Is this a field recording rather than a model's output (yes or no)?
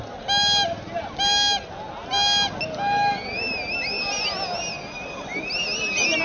yes